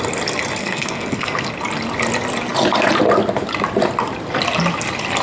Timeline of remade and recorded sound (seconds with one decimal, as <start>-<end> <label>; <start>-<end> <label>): 0.0-0.6 recorded; 0.6-1.5 remade; 1.5-5.2 recorded